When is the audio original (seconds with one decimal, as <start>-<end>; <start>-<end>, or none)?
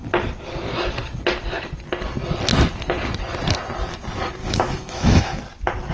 0.0-4.4; 5.4-5.9